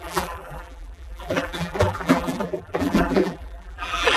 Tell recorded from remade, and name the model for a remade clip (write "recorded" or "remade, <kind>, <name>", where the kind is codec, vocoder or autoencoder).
remade, vocoder, BigVGAN v2